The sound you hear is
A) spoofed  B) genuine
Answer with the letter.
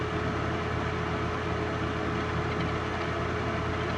B